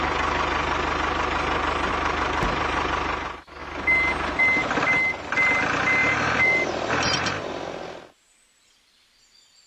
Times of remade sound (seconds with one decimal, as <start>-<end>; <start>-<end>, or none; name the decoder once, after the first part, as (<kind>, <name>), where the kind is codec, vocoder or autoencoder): 6.0-7.5 (vocoder, BigVGAN v2)